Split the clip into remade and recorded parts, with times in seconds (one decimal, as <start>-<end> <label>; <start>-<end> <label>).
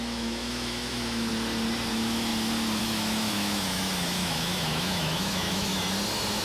0.0-1.3 remade; 1.3-1.9 recorded; 1.9-2.3 remade; 2.3-2.8 recorded; 2.8-5.7 remade; 5.7-6.4 recorded